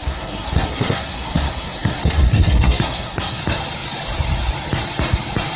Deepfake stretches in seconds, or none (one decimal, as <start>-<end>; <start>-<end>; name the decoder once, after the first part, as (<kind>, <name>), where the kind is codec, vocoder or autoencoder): 0.0-3.4 (codec, SNAC)